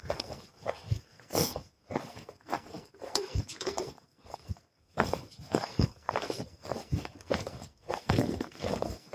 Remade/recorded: remade